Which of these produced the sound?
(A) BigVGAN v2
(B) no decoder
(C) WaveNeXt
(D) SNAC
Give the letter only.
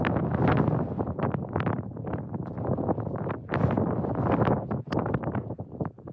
B